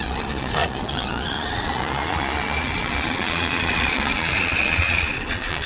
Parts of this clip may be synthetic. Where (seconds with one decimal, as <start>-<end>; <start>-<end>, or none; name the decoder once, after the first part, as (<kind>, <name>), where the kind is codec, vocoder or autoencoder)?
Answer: 0.0-5.7 (vocoder, Vocos)